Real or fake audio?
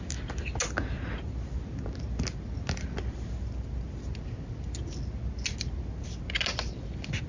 real